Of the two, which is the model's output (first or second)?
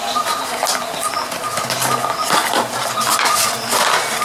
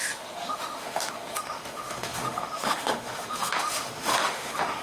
second